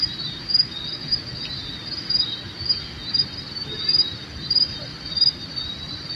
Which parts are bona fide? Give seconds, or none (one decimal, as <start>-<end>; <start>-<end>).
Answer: 1.0-2.1